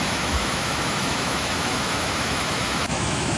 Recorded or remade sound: remade